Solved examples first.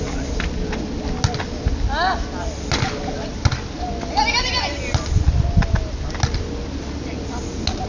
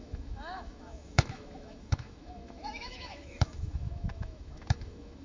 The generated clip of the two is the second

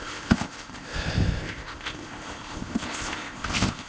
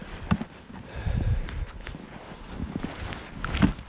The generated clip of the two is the first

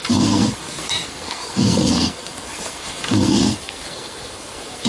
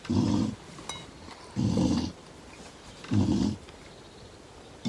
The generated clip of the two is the first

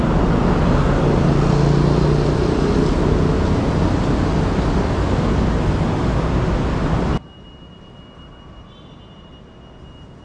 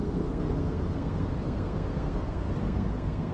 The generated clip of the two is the second